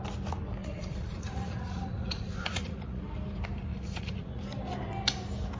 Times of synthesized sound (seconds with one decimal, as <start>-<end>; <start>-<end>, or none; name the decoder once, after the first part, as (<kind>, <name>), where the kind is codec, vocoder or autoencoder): 0.6-3.0 (vocoder, Vocos); 3.7-4.4